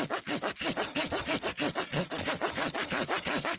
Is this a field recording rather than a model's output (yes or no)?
yes